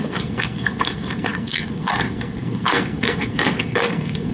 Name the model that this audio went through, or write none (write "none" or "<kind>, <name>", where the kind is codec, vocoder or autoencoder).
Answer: codec, SNAC